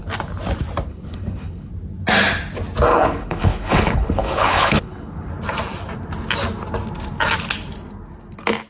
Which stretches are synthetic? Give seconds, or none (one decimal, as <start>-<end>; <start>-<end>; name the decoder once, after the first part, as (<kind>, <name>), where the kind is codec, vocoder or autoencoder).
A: 0.9-1.7 (codec, HILCodec); 2.9-5.3